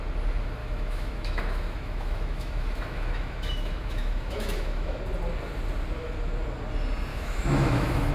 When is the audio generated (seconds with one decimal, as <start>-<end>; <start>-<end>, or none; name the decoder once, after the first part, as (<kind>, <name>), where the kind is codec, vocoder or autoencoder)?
0.6-5.0 (autoencoder, DAC-VAE); 7.1-8.1